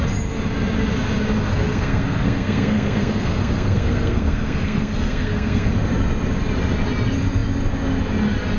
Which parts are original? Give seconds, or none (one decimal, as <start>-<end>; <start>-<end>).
0.0-1.5; 5.7-8.6